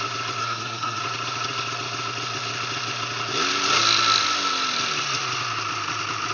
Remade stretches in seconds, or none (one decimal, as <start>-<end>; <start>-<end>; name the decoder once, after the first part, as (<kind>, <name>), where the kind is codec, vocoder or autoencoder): 0.4-1.0 (codec, SNAC)